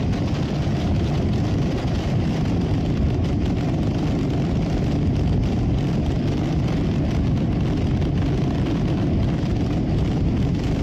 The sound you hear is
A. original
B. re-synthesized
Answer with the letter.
A